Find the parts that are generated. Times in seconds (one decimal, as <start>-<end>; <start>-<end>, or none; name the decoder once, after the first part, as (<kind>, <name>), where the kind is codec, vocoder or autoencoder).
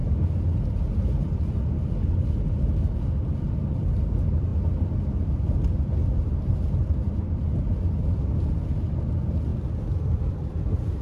none